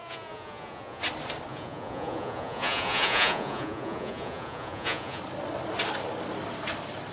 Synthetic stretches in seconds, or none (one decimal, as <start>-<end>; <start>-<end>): 0.0-1.0; 1.5-5.2